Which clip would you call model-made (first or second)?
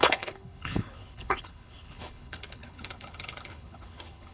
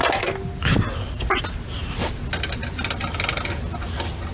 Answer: first